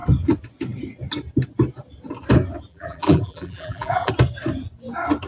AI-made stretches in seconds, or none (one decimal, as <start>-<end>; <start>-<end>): 2.7-4.1